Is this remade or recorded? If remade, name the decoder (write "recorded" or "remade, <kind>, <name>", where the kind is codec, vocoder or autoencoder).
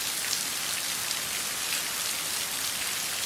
recorded